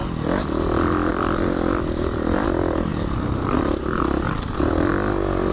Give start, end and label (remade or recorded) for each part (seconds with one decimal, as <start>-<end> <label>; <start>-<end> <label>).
0.0-1.1 recorded; 1.1-5.5 remade